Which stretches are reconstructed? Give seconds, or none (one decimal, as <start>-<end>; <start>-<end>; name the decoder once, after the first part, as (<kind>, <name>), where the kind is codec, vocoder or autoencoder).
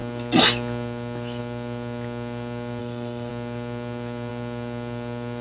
2.8-3.3 (codec, DAC)